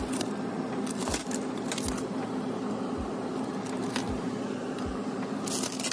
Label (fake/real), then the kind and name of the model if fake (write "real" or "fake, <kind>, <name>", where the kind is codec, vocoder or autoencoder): real